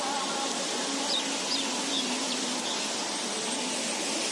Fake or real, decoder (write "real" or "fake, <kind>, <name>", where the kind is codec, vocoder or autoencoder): real